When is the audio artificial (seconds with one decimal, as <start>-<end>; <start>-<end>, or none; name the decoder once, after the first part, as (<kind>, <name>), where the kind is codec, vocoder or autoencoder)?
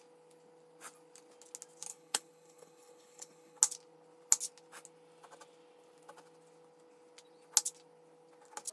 1.9-3.6 (codec, HILCodec)